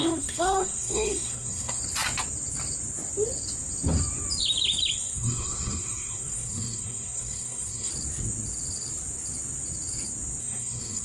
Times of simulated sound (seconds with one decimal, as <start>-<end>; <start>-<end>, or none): 0.0-1.8; 4.9-7.9; 10.4-11.0